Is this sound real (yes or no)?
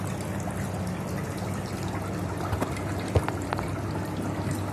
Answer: yes